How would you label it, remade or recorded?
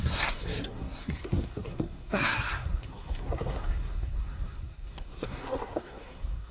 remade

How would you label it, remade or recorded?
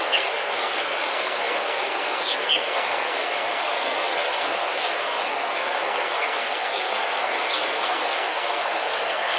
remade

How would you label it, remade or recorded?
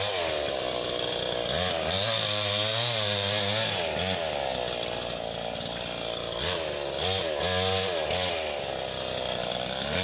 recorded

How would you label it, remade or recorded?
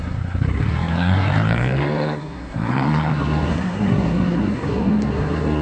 remade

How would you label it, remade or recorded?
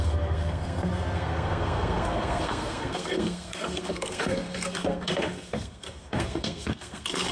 remade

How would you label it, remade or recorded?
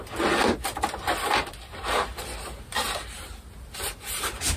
recorded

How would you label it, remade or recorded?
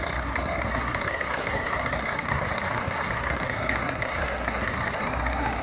remade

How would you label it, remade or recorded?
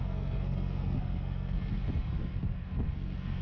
remade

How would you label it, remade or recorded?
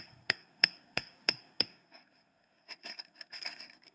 remade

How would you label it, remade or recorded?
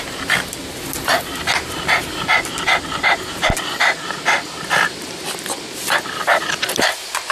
recorded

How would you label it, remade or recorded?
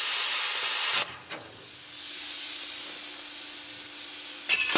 recorded